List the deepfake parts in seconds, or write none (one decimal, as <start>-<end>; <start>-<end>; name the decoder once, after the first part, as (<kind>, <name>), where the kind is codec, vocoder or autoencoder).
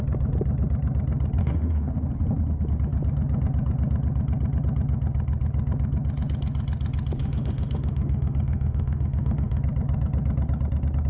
1.4-1.9 (autoencoder, DAC-VAE); 7.2-9.6